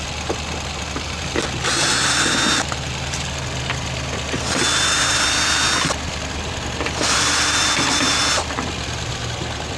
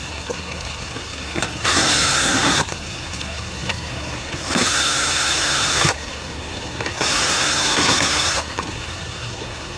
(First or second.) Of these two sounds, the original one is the first